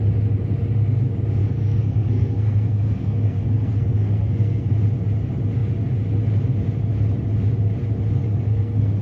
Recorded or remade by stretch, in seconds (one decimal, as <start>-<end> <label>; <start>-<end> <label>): 0.0-1.4 recorded; 1.4-4.7 remade; 4.7-8.2 recorded; 8.2-9.0 remade